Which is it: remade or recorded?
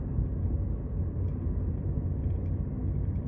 recorded